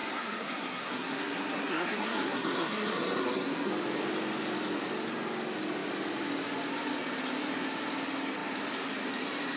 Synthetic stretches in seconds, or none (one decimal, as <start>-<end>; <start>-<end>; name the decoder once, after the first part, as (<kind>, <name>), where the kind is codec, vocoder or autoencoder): 0.0-3.7 (codec, SNAC)